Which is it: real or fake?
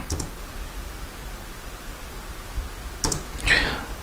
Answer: real